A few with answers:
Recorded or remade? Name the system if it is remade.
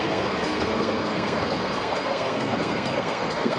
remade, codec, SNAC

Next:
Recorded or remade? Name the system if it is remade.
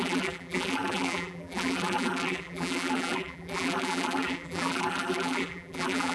remade, vocoder, BigVGAN v2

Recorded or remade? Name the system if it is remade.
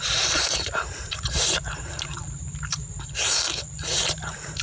remade, vocoder, BigVGAN v2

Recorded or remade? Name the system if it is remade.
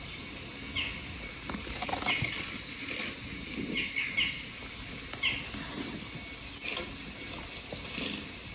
recorded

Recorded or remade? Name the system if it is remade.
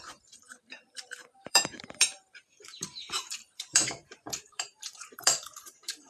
remade, vocoder, BigVGAN v2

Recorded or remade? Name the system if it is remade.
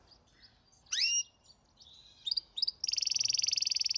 recorded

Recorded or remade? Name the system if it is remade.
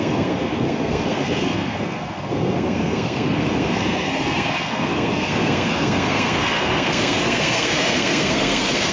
remade, codec, SNAC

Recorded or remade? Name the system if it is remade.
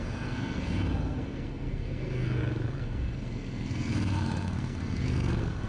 remade, codec, SNAC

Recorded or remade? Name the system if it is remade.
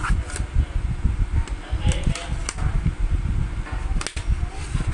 recorded